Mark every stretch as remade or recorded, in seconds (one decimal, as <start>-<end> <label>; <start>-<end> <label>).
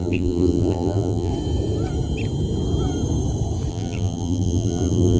0.0-1.3 remade; 1.3-3.7 recorded; 3.7-5.2 remade